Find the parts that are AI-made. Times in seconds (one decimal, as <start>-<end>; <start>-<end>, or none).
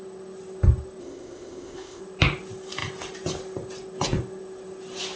1.0-2.0